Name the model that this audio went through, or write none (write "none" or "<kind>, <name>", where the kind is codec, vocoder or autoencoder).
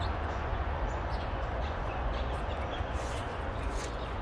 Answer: vocoder, Vocos